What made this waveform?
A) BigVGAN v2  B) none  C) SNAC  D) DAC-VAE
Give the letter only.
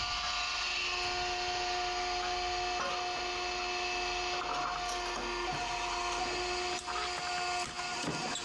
B